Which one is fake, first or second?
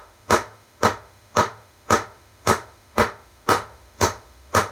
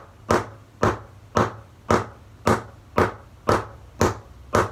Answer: first